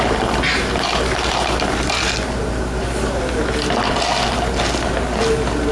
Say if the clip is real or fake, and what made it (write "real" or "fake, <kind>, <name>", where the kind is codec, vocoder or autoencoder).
real